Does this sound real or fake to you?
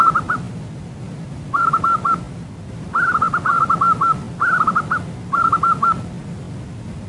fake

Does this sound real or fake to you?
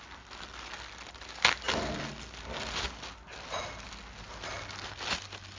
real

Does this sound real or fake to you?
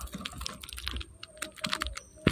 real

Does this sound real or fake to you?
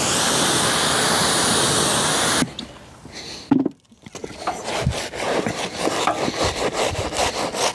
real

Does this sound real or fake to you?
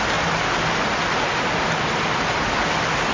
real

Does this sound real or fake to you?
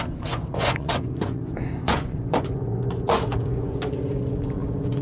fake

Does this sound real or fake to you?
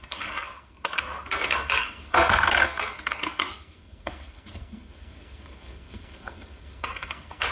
fake